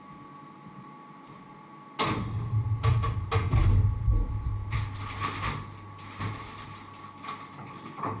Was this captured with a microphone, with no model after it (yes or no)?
yes